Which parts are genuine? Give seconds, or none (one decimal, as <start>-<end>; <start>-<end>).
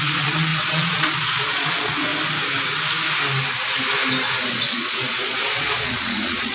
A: 2.1-4.5